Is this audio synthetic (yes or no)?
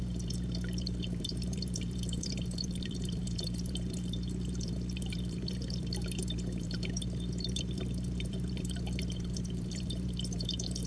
yes